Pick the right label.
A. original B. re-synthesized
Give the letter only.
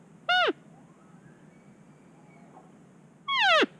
A